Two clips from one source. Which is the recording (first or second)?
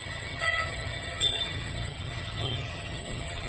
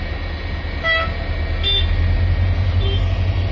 second